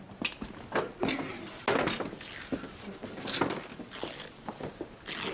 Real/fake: real